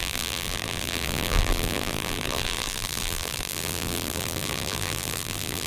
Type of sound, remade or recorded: remade